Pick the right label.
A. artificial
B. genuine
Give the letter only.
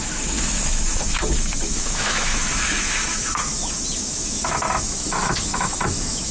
A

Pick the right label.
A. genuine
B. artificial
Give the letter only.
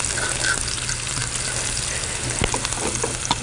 A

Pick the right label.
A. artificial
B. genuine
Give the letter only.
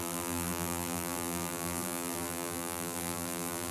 A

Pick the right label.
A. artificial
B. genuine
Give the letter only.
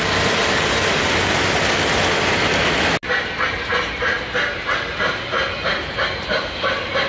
B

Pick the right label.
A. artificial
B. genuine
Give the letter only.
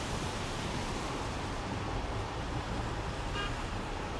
A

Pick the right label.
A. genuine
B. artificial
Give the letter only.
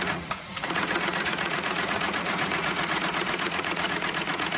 B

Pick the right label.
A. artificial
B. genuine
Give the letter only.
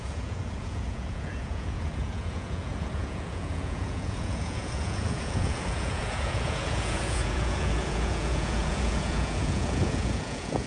A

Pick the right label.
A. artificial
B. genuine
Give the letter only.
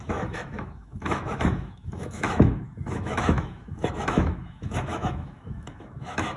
A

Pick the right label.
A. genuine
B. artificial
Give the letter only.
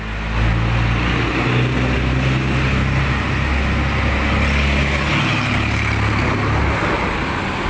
A